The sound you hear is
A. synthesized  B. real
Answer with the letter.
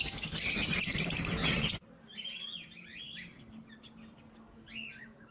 B